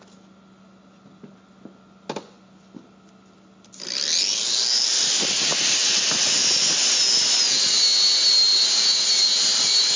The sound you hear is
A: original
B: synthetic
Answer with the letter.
A